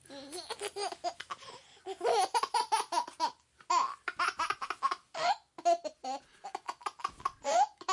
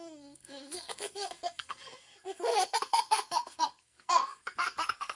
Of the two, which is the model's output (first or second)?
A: second